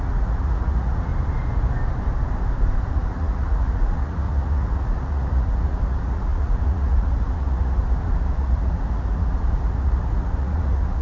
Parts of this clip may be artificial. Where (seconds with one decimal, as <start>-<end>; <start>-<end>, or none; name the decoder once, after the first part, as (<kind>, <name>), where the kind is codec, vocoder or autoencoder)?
0.0-1.1 (vocoder, Vocos); 2.9-11.0

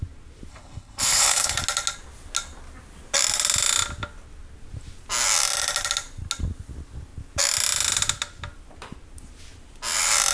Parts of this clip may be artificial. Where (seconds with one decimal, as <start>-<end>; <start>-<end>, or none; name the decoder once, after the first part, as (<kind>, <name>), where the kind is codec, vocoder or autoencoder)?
0.5-1.6 (codec, HILCodec)

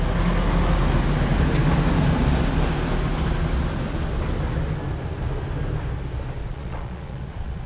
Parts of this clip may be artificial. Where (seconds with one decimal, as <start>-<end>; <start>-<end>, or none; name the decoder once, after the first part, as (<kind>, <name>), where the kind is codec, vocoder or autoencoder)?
6.4-7.7 (vocoder, Vocos)

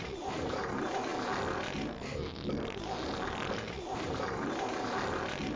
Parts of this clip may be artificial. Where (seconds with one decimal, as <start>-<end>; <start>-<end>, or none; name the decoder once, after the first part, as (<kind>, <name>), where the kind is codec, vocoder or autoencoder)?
0.0-1.1 (vocoder, BigVGAN v2); 3.8-5.6

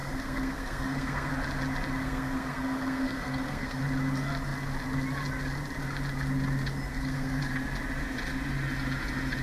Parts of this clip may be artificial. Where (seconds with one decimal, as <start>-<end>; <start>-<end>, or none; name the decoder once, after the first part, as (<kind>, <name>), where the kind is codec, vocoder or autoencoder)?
0.0-1.3 (codec, SNAC); 2.0-3.8; 6.9-7.4

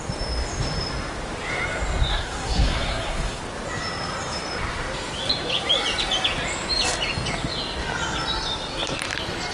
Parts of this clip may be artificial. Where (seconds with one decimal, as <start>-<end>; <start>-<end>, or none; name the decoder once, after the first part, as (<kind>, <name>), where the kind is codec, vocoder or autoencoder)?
2.1-3.4 (codec, SNAC)

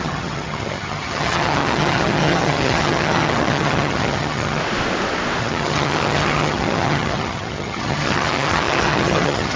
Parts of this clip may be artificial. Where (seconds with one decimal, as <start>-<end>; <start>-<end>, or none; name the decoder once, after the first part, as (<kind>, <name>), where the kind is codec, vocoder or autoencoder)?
0.0-4.6 (vocoder, HiFi-GAN); 5.4-9.6